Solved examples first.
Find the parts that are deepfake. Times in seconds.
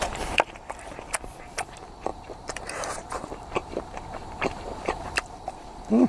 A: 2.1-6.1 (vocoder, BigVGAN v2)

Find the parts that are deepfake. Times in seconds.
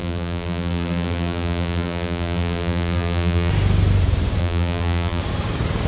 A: 0.0-3.5 (vocoder, BigVGAN v2); 4.4-5.2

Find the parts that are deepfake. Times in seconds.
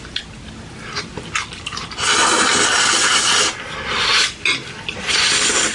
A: 0.0-1.8 (vocoder, BigVGAN v2); 4.2-5.7